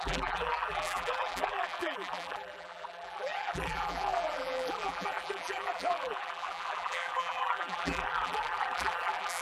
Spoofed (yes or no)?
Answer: yes